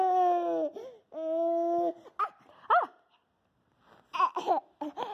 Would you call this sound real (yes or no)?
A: yes